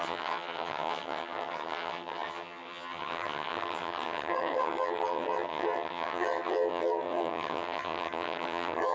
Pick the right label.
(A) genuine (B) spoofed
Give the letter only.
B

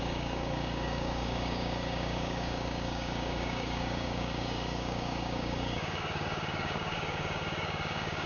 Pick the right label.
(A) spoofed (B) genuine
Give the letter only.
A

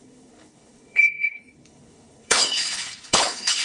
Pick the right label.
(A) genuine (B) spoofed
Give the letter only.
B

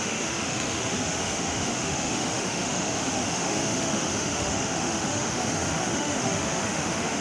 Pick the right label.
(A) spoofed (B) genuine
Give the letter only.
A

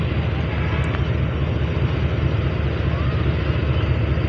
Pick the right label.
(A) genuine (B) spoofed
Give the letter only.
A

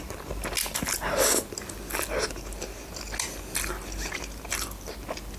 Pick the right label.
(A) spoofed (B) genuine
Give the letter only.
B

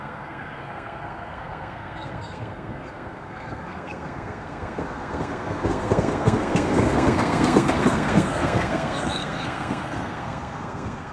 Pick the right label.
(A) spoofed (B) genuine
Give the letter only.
A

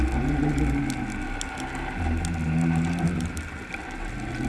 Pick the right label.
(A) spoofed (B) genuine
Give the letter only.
B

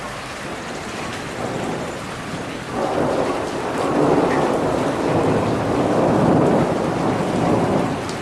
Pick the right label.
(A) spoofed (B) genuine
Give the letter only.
A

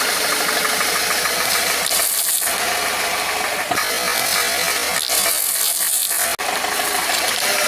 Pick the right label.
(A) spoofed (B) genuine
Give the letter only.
B